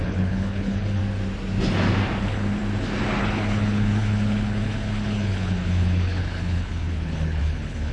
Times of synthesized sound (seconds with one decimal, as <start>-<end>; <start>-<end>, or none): 0.0-1.0; 2.2-2.6; 3.2-7.9